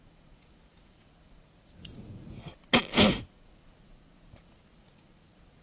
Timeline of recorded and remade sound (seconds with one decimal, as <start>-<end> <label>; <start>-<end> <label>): 0.0-2.5 remade; 2.5-3.1 recorded; 3.1-5.6 remade